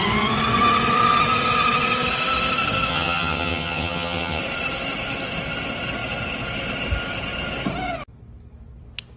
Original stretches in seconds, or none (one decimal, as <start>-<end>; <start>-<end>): 0.0-2.9; 4.4-9.2